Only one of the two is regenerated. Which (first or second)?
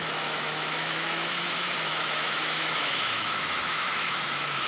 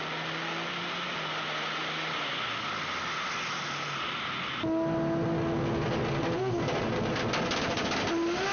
first